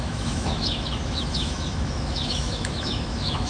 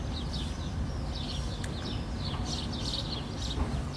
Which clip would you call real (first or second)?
second